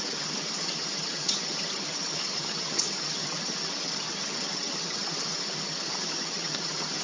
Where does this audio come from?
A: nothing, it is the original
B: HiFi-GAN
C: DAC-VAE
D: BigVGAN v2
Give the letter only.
B